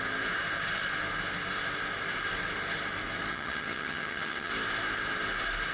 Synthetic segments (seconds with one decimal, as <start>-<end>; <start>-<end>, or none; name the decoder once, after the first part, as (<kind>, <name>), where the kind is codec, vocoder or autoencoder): 3.3-4.5 (vocoder, HiFi-GAN)